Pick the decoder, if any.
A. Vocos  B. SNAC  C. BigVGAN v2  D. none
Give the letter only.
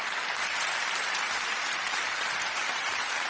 C